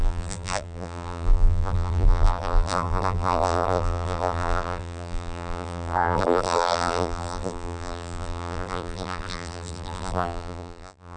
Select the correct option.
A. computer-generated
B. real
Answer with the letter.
A